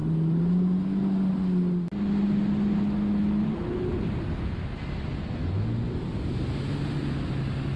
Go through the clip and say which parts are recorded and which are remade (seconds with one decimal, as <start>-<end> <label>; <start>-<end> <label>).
0.0-7.8 recorded